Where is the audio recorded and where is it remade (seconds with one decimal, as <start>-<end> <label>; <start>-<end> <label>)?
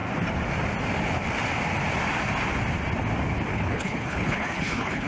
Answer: 0.0-3.5 recorded; 3.5-5.1 remade